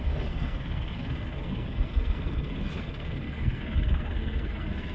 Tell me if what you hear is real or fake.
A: fake